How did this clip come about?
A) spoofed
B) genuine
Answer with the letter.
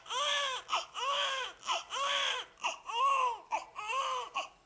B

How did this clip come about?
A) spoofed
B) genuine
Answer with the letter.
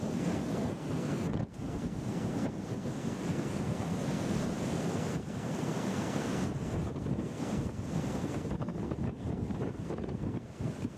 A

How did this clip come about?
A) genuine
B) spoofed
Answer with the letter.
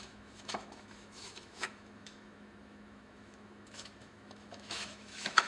B